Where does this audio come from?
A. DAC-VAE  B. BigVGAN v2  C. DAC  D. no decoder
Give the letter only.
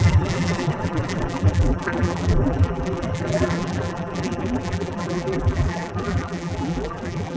B